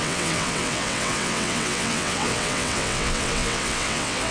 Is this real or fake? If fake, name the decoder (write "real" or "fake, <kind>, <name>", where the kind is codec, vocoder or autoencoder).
fake, vocoder, WaveNeXt